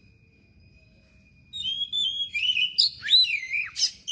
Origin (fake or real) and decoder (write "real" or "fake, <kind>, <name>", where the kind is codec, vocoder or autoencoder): real